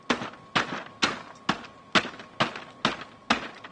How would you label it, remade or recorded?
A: recorded